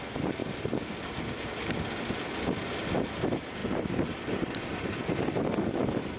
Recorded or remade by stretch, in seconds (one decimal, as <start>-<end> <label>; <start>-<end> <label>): 0.0-0.4 recorded; 0.4-2.0 remade; 2.0-3.6 recorded; 3.6-5.5 remade; 5.5-6.2 recorded